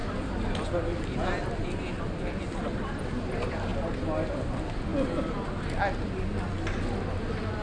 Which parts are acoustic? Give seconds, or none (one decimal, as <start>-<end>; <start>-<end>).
0.0-2.0; 3.7-4.4; 4.9-7.1